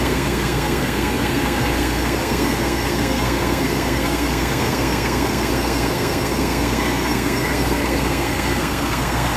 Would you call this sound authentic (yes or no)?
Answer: no